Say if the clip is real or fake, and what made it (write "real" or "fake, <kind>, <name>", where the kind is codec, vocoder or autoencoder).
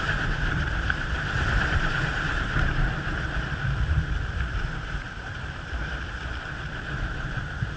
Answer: fake, vocoder, BigVGAN v2